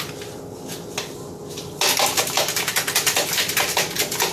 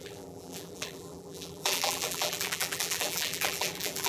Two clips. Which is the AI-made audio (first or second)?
second